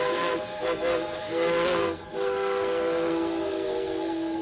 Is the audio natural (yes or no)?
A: no